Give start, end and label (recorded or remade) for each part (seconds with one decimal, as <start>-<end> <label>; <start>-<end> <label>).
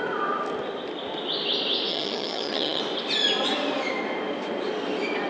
0.0-1.9 recorded; 1.9-2.8 remade; 2.8-5.3 recorded